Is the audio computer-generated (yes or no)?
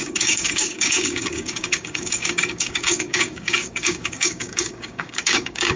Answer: yes